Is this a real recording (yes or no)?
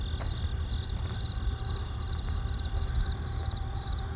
yes